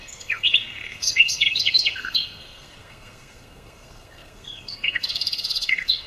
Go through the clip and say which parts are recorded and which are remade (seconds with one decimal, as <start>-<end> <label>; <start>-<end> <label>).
0.0-6.1 remade